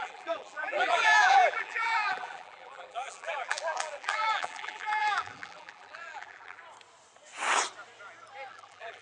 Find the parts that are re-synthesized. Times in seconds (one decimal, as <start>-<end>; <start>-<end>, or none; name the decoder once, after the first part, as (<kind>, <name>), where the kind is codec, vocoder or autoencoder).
0.0-6.6 (vocoder, BigVGAN v2); 8.5-9.0